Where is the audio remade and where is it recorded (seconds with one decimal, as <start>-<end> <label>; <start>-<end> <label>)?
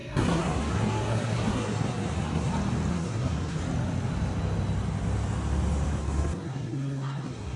0.0-2.5 remade; 2.5-2.9 recorded; 2.9-3.6 remade; 3.6-6.0 recorded; 6.0-7.6 remade